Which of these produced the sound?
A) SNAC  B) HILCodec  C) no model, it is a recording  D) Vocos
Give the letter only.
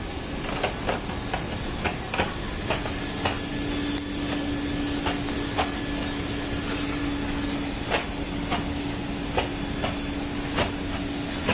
C